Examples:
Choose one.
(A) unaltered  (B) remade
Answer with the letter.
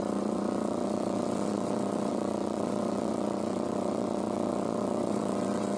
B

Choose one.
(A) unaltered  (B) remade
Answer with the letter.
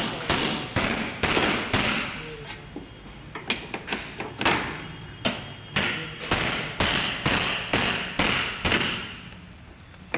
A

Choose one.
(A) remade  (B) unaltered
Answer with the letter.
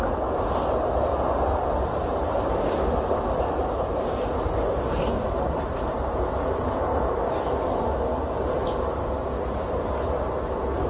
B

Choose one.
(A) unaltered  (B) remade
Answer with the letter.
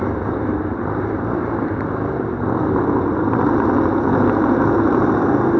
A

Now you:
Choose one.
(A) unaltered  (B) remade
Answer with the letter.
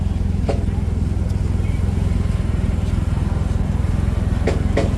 A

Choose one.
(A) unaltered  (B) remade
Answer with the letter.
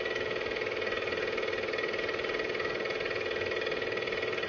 A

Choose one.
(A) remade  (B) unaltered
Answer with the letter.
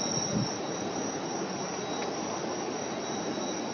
B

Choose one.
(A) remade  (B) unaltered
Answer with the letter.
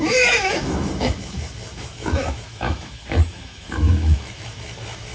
A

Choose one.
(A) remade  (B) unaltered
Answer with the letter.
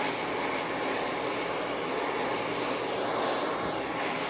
B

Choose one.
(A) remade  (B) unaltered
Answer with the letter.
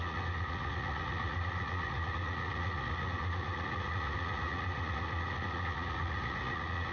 A